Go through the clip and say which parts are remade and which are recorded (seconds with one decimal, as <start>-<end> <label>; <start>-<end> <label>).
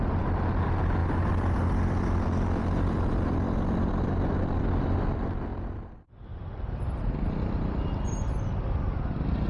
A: 0.0-5.5 recorded; 5.5-9.5 remade